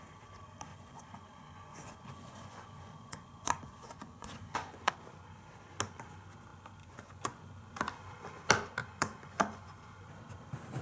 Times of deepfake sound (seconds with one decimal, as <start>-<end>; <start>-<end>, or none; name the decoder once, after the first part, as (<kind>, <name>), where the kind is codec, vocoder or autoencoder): 0.7-4.9 (vocoder, Vocos); 6.8-7.7; 8.8-9.9